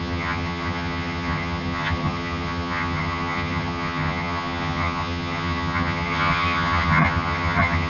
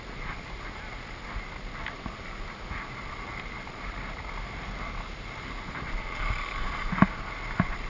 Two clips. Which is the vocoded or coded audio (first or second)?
first